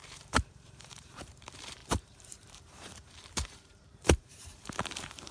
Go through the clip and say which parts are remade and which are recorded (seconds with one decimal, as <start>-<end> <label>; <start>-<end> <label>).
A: 0.0-5.3 remade